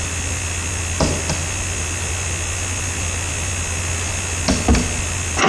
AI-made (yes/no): no